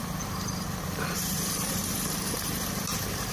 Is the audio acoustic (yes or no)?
no